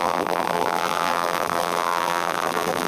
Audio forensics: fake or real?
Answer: fake